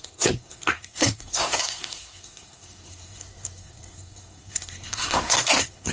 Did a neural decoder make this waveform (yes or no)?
yes